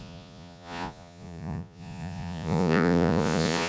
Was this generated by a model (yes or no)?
yes